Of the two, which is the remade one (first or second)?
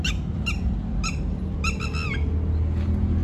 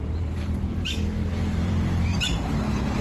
second